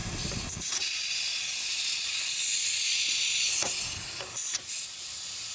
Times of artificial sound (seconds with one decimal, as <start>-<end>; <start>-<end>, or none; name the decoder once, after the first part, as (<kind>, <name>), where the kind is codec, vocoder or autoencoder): none